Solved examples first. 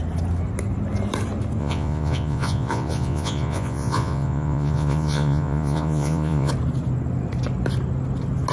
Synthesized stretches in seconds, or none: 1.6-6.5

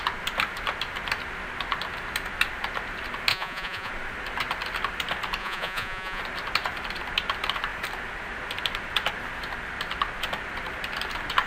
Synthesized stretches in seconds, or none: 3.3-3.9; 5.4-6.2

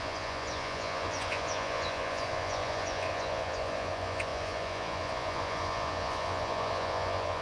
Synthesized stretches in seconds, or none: 0.0-7.4